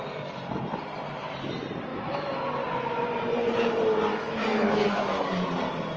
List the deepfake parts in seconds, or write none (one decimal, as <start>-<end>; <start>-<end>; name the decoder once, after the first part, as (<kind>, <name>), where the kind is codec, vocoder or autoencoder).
1.9-2.4 (autoencoder, DAC-VAE); 4.1-5.5